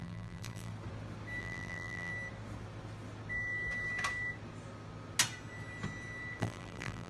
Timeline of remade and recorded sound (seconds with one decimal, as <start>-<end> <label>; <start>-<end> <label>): 0.0-0.7 remade; 0.7-1.4 recorded; 1.4-2.1 remade; 2.1-6.4 recorded; 6.4-7.1 remade